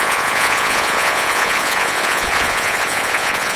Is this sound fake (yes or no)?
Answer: yes